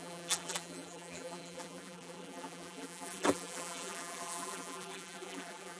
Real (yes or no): no